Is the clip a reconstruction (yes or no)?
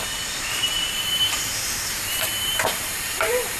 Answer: yes